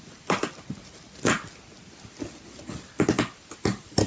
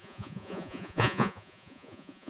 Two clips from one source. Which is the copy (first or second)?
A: second